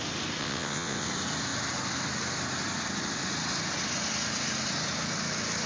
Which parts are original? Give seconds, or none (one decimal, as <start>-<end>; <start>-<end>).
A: 0.0-0.4; 1.1-5.7